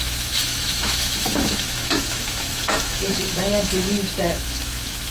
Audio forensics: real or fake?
fake